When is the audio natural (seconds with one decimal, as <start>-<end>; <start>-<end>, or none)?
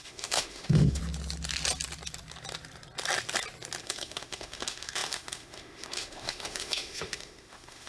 1.0-3.8